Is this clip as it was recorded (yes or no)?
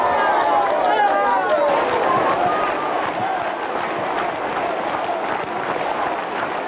yes